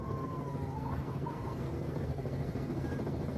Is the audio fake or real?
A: fake